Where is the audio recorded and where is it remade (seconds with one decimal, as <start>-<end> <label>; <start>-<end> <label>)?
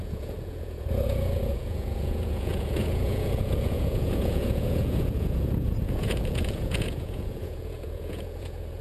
0.0-8.8 remade